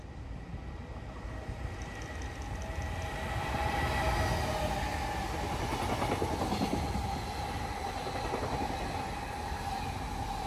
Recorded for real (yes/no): yes